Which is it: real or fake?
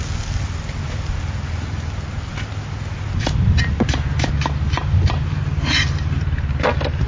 real